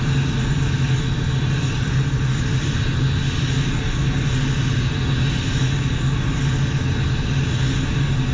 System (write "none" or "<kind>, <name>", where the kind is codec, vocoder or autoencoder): none